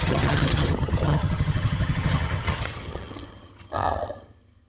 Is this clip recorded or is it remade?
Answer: remade